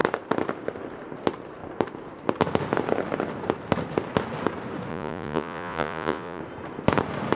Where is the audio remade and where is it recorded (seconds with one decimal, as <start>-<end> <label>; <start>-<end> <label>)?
0.0-4.9 recorded; 4.9-6.4 remade; 6.4-7.4 recorded